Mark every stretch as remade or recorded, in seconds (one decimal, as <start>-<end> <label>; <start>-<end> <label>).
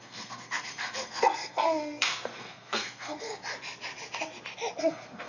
0.0-3.3 remade; 3.3-4.8 recorded; 4.8-5.3 remade